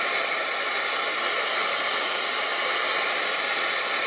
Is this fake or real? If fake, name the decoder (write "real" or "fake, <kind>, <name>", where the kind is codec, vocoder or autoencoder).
real